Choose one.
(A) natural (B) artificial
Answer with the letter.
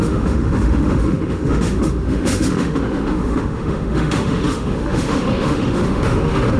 B